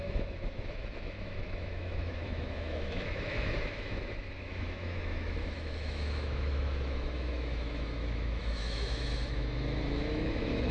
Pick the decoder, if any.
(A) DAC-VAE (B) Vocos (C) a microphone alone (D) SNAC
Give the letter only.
A